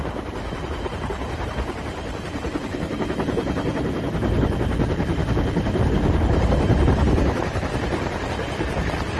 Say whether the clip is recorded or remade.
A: remade